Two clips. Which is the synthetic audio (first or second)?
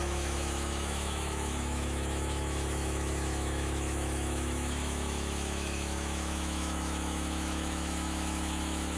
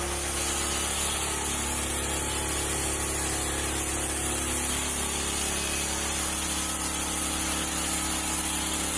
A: first